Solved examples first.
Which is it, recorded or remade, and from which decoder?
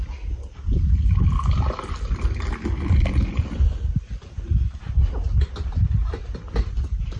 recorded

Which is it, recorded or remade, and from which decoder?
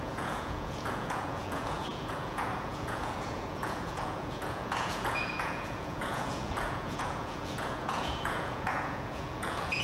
remade, vocoder, Vocos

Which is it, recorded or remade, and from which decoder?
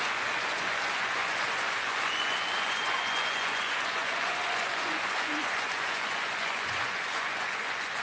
remade, vocoder, Vocos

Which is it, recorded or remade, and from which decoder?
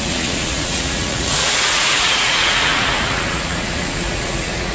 remade, vocoder, Vocos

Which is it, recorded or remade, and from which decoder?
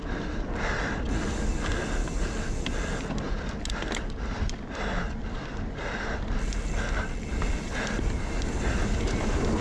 recorded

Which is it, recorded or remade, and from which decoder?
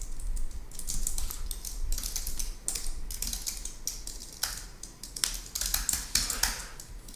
recorded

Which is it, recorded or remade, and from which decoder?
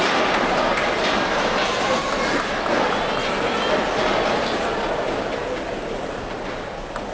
recorded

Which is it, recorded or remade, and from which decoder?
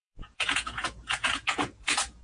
remade, vocoder, Vocos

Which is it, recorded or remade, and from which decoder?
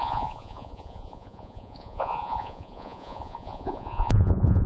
remade, vocoder, Vocos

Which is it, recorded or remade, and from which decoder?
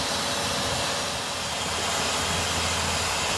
recorded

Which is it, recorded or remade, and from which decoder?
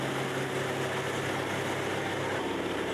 recorded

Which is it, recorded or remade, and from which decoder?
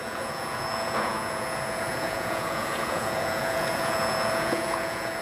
remade, vocoder, Vocos